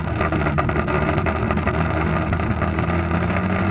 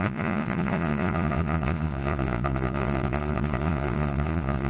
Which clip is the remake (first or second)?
second